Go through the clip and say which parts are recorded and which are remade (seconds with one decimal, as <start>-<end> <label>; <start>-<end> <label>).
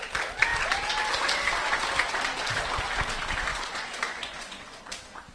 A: 0.0-3.5 recorded; 3.5-4.8 remade; 4.8-5.3 recorded